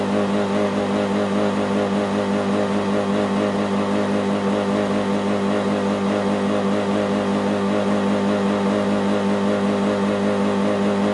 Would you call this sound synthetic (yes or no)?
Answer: no